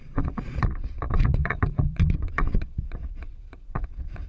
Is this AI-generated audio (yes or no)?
yes